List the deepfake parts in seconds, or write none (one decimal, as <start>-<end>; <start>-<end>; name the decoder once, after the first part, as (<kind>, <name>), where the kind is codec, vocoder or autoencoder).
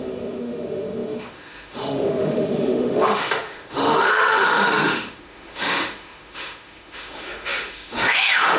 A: 0.0-8.6 (autoencoder, DAC-VAE)